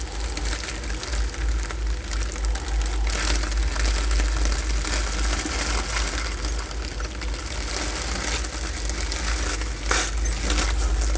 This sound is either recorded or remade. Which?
recorded